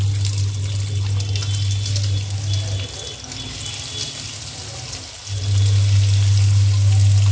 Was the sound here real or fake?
real